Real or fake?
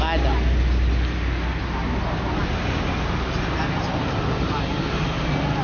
real